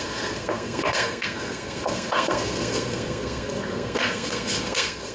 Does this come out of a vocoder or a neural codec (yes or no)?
yes